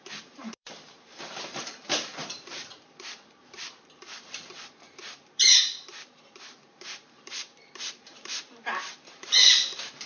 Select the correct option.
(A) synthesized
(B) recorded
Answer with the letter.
A